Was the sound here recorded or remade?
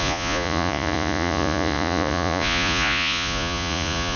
remade